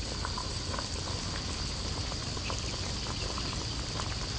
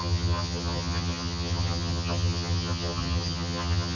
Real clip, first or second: first